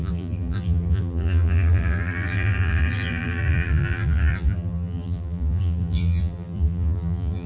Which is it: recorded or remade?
remade